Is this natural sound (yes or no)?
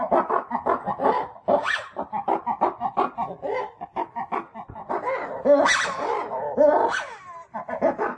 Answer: yes